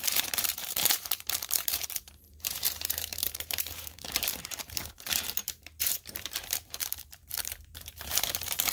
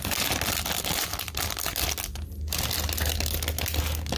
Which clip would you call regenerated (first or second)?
first